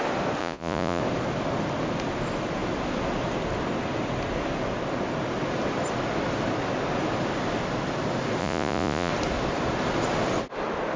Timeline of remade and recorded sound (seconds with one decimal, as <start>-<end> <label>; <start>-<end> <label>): 0.0-0.4 recorded; 0.4-1.0 remade; 1.0-8.4 recorded; 8.4-9.1 remade; 9.1-11.0 recorded